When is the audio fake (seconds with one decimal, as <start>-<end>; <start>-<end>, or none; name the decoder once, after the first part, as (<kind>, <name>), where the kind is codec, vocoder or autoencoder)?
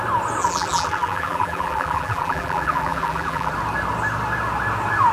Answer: 0.4-3.5 (vocoder, BigVGAN v2)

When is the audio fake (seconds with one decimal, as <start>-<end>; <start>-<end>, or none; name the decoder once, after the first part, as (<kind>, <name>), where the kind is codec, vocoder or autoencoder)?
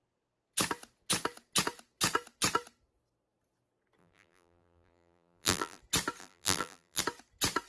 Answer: 4.0-5.8 (vocoder, BigVGAN v2); 6.2-7.0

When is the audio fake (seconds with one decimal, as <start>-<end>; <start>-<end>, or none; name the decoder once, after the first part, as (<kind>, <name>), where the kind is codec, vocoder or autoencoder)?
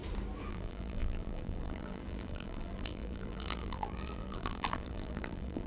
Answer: 0.5-5.7 (vocoder, BigVGAN v2)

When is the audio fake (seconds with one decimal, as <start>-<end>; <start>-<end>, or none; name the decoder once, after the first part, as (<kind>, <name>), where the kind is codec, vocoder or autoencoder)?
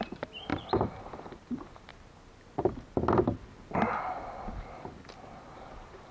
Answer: 0.0-1.9 (vocoder, BigVGAN v2); 5.5-6.1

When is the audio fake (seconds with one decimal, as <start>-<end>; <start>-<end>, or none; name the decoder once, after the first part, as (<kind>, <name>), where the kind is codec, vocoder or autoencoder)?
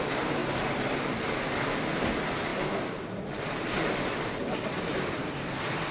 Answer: 0.0-0.4 (vocoder, BigVGAN v2); 1.9-2.5; 4.5-5.9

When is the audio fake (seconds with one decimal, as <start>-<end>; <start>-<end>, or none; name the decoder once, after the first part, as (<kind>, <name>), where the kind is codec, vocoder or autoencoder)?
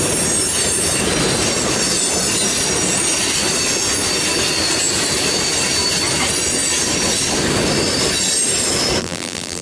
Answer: 9.0-9.6 (vocoder, BigVGAN v2)